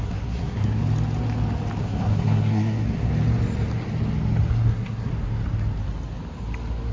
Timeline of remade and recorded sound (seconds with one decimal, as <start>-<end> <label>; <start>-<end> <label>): 0.0-0.8 remade; 0.8-1.8 recorded; 1.8-3.1 remade; 3.1-4.5 recorded; 4.5-5.1 remade; 5.1-6.9 recorded